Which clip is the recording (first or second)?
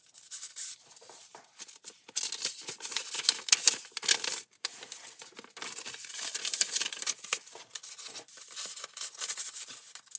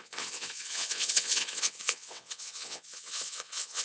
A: first